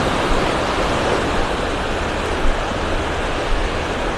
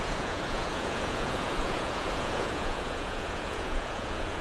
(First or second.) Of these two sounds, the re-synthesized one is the second